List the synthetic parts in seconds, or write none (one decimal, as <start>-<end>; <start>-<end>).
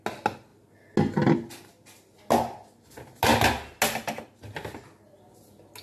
none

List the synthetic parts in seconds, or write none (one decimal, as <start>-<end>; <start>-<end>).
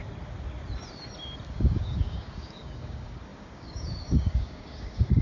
1.5-5.2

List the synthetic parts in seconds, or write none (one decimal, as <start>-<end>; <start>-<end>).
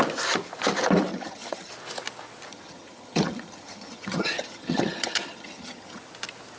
1.1-1.7; 2.5-6.0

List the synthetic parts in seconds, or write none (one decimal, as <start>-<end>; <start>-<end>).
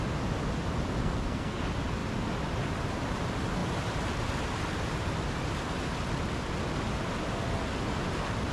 1.0-1.6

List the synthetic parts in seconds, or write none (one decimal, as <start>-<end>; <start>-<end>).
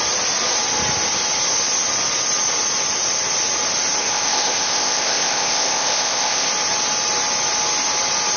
4.0-6.5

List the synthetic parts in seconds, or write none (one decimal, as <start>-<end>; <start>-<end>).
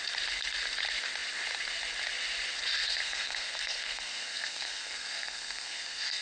2.8-6.2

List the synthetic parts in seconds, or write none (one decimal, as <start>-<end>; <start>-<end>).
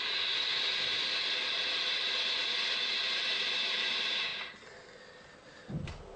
none